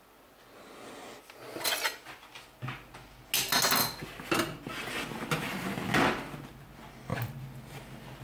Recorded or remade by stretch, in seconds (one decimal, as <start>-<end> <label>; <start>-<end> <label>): 0.0-8.2 recorded